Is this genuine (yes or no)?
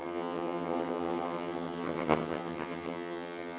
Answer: no